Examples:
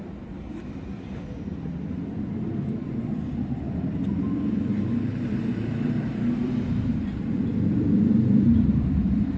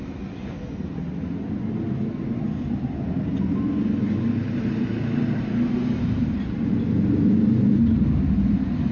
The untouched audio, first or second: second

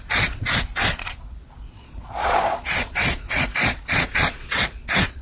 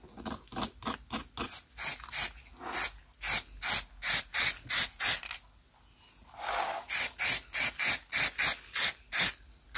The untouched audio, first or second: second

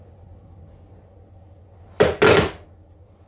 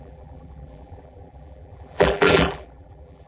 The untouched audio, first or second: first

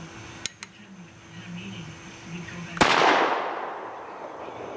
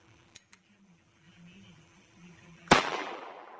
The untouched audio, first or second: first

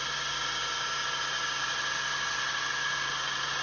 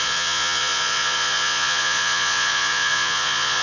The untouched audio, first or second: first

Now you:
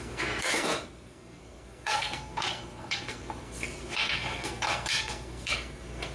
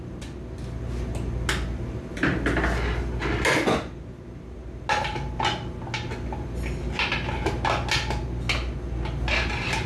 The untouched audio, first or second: second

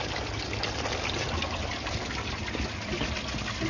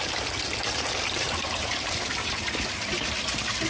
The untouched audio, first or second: first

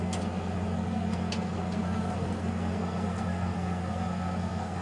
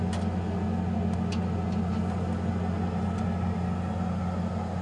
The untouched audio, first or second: second